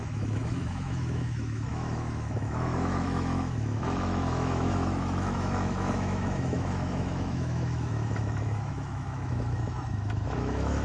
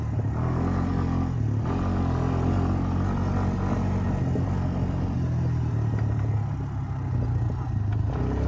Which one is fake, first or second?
first